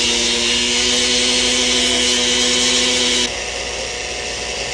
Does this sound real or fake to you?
real